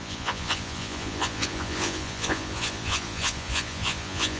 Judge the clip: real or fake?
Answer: fake